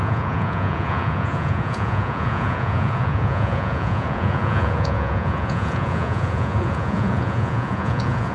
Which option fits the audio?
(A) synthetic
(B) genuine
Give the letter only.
A